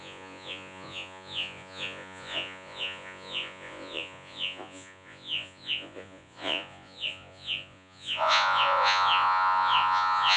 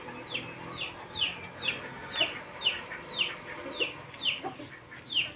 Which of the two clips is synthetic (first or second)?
first